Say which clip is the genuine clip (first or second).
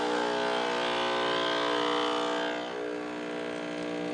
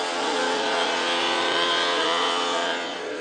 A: first